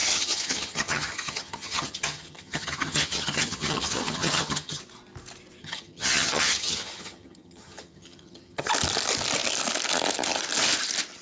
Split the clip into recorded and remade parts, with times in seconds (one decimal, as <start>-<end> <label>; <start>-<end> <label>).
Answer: 0.0-4.8 remade; 4.8-5.6 recorded; 5.6-8.7 remade; 8.7-11.2 recorded